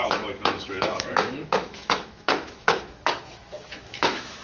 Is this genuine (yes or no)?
no